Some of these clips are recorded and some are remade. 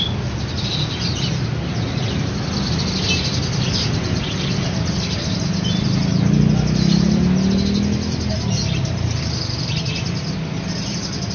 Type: recorded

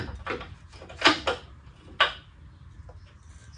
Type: recorded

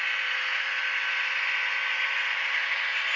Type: recorded